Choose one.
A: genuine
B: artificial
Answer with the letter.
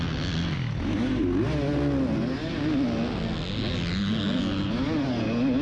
A